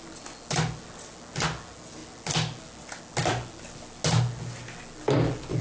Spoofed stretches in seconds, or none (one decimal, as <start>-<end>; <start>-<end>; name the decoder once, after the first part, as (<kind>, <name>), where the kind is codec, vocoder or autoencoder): none